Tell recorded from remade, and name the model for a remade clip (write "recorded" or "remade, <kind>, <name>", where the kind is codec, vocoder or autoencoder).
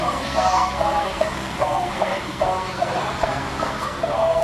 remade, codec, SNAC